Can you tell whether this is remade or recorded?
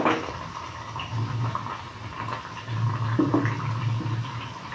recorded